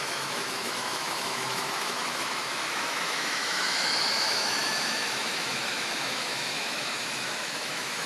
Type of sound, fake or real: fake